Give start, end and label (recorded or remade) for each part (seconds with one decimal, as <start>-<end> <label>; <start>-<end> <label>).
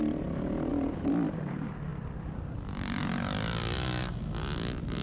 0.0-0.7 recorded; 0.7-1.5 remade; 1.5-1.9 recorded; 1.9-3.0 remade; 3.0-5.0 recorded